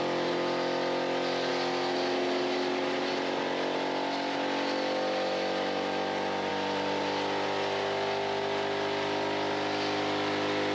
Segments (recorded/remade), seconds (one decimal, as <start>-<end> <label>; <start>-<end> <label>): 0.0-10.7 recorded